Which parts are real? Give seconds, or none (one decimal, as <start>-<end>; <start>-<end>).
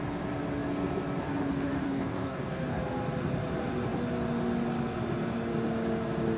0.0-1.8; 2.8-6.4